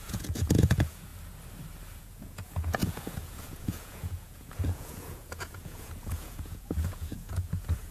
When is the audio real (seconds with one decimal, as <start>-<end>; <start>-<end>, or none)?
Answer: 1.1-2.0